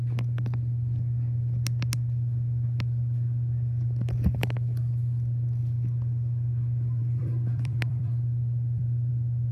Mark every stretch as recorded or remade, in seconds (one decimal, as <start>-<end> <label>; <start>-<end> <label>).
0.0-7.0 recorded; 7.0-9.1 remade; 9.1-9.5 recorded